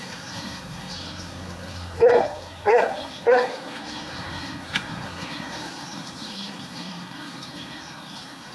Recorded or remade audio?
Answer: remade